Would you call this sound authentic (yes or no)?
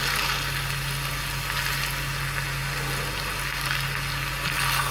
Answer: yes